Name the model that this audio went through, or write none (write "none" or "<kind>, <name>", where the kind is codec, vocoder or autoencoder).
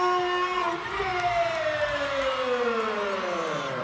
none